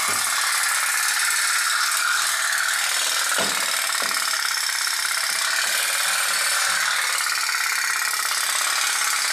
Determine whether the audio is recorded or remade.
recorded